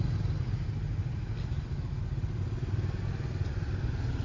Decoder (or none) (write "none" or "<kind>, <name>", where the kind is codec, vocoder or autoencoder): none